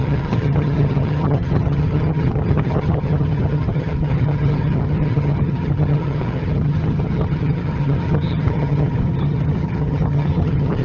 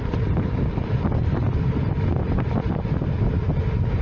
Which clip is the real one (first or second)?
second